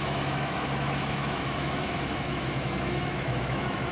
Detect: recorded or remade remade